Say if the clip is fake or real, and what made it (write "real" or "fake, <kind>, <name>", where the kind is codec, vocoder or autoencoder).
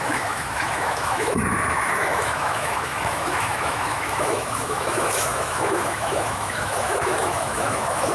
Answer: fake, autoencoder, DAC-VAE